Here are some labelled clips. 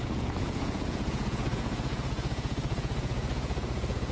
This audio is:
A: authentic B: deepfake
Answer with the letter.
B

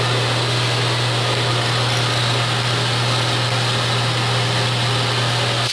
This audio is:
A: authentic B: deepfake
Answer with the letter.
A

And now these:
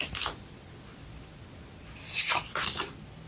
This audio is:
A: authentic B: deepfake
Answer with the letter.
A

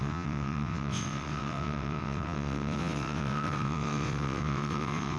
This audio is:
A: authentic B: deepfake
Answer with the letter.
B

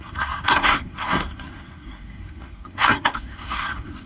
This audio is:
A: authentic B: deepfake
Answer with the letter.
B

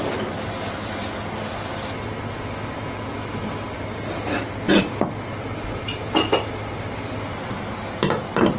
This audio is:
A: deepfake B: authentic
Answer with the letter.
B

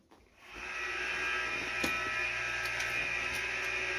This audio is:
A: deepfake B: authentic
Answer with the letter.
B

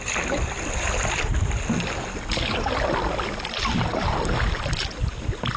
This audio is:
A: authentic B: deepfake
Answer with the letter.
A